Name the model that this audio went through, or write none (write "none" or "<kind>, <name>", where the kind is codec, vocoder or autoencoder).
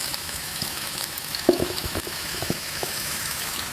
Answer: autoencoder, DAC-VAE